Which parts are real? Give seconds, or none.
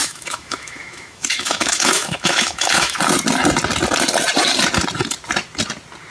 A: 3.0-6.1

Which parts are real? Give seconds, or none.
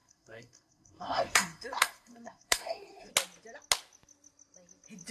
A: 3.1-5.1